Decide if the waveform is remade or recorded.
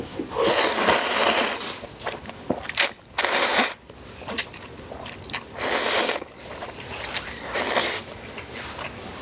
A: remade